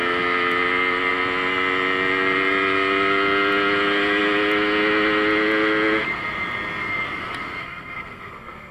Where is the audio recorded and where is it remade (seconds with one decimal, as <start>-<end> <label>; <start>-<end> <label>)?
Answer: 0.0-7.6 recorded; 7.6-8.7 remade